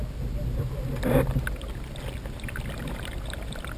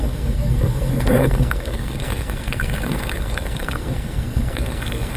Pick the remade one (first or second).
second